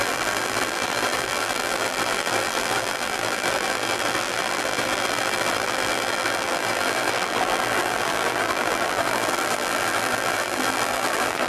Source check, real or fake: fake